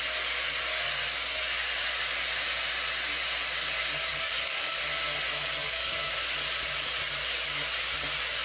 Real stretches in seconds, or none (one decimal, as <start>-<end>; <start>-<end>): 0.0-4.1; 4.8-5.6; 6.1-8.4